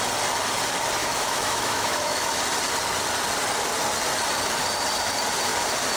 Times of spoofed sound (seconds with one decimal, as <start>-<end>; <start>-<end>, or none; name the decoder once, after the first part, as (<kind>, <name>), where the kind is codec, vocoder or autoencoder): 1.0-2.4 (autoencoder, DAC-VAE)